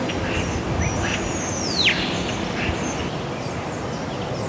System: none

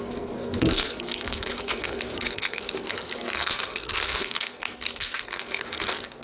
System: codec, SNAC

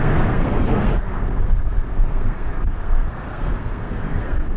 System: codec, SNAC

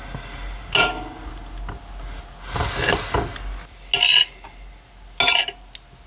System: none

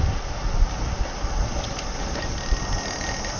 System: none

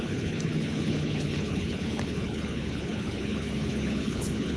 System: codec, HILCodec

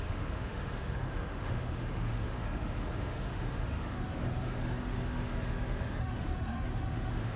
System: autoencoder, DAC-VAE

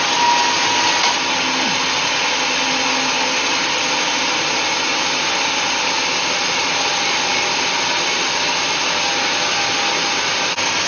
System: none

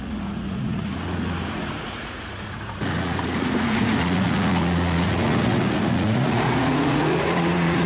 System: vocoder, Vocos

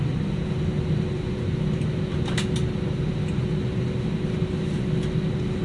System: none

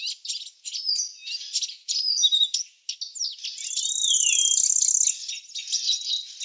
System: none